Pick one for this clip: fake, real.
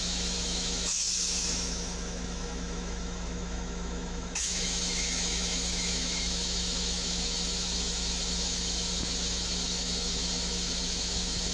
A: fake